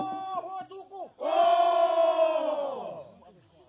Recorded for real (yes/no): yes